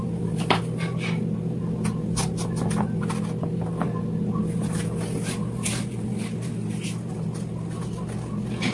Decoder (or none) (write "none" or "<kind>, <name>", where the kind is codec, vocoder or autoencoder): none